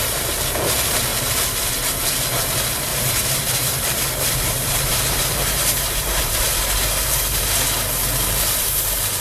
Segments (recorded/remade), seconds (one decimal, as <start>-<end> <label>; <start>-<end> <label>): 0.0-2.9 recorded; 2.9-7.4 remade; 7.4-9.2 recorded